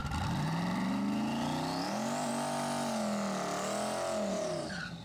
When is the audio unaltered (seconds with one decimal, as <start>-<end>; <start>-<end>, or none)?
0.0-5.0